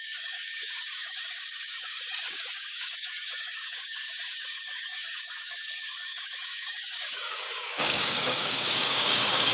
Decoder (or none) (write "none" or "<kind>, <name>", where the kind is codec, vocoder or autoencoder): codec, DAC